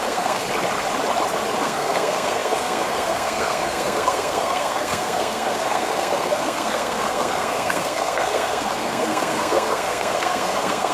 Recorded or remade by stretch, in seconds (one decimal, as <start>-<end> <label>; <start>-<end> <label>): 0.0-0.4 remade; 0.4-1.6 recorded; 1.6-10.9 remade